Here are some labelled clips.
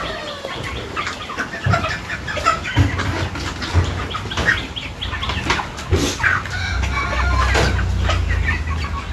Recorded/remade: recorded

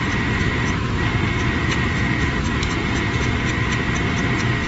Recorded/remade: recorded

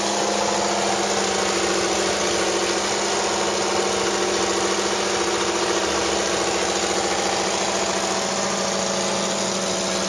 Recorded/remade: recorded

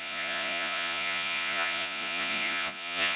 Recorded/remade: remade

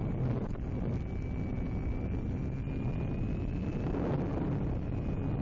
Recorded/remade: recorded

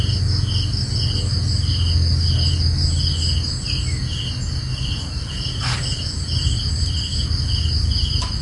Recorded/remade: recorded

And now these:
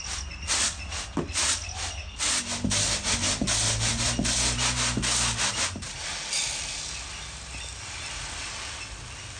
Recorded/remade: recorded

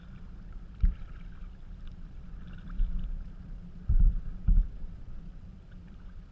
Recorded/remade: remade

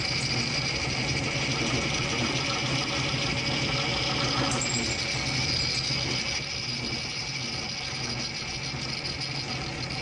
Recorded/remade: recorded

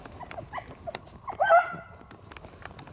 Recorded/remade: recorded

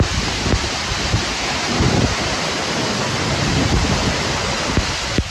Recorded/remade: recorded